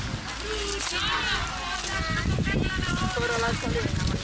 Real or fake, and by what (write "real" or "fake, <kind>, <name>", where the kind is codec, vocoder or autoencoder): real